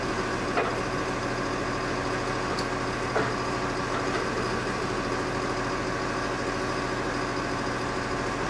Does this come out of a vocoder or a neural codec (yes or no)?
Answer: no